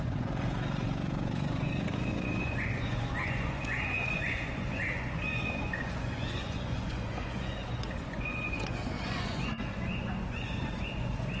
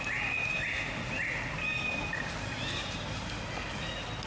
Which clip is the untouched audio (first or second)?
second